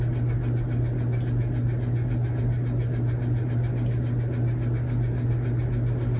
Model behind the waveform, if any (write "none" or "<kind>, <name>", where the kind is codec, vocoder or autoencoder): none